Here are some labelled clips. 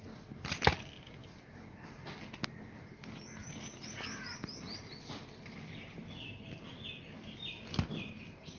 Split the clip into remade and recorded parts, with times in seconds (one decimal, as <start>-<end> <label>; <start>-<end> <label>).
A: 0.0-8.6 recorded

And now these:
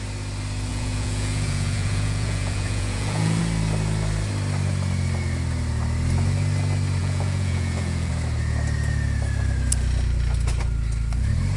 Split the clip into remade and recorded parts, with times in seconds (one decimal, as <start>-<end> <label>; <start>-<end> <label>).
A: 0.0-0.7 recorded; 0.7-3.4 remade; 3.4-7.0 recorded; 7.0-8.1 remade; 8.1-11.6 recorded

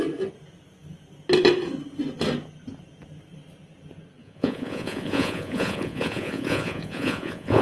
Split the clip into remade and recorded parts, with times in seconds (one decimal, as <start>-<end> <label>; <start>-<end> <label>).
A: 0.0-4.2 recorded; 4.2-7.6 remade